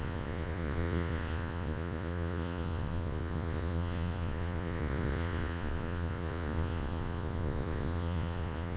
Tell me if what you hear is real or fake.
fake